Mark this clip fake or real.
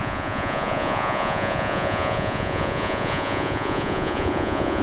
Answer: fake